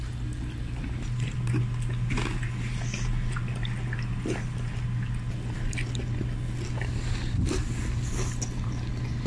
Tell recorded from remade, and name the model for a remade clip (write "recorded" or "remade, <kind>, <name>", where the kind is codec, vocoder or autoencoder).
recorded